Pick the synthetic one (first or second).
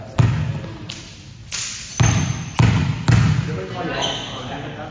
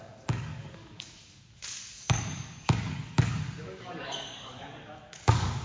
second